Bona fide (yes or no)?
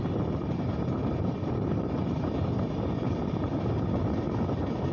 yes